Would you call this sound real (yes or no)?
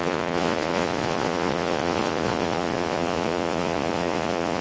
no